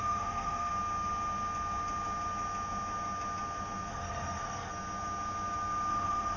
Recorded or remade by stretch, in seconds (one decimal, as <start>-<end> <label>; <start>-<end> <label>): 0.0-0.7 remade; 0.7-3.9 recorded; 3.9-4.7 remade; 4.7-5.9 recorded; 5.9-6.4 remade

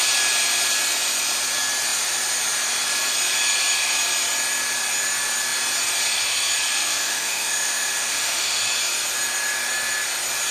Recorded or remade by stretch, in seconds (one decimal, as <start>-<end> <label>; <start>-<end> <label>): 0.0-6.7 recorded; 6.7-8.6 remade; 8.6-10.5 recorded

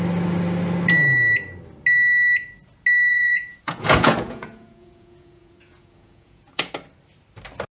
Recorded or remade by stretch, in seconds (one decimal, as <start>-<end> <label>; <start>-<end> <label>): 0.0-3.1 recorded; 3.1-6.7 remade; 6.7-7.7 recorded

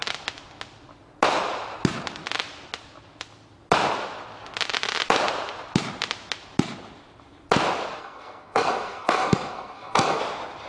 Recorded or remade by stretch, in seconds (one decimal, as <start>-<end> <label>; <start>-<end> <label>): 0.0-8.0 recorded; 8.0-10.2 remade; 10.2-10.7 recorded

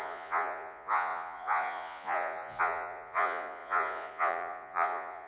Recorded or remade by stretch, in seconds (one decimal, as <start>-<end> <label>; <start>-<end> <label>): 0.0-5.3 remade